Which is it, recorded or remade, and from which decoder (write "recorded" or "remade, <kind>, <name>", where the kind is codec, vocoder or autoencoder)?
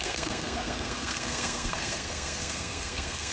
remade, codec, SNAC